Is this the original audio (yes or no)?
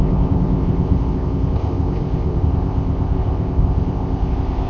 no